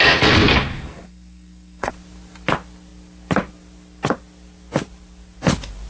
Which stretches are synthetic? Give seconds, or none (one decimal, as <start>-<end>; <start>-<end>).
0.7-1.9